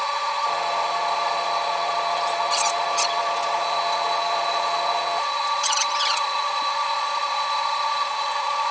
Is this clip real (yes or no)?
no